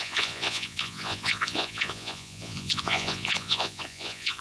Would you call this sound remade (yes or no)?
yes